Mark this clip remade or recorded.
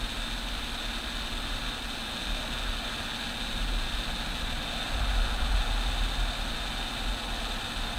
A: recorded